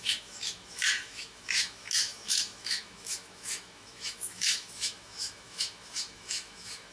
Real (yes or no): no